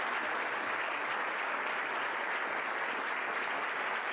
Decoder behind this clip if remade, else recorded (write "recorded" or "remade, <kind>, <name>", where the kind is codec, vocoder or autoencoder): recorded